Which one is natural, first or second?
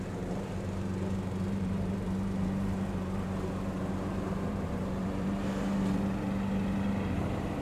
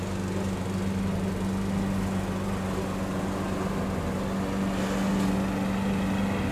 second